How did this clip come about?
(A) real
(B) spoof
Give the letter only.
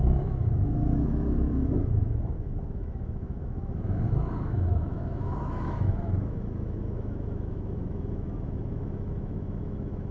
B